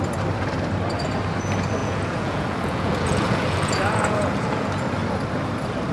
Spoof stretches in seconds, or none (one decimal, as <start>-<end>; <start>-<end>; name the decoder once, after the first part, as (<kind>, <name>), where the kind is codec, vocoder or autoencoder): 1.8-4.7 (vocoder, Vocos)